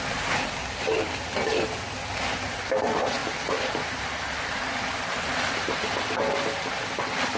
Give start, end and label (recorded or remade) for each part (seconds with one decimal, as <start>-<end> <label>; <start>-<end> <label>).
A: 0.0-7.4 recorded